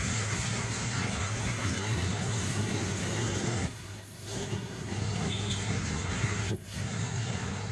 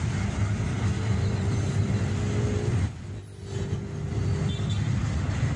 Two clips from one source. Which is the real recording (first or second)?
second